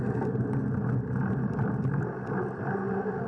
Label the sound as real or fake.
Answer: real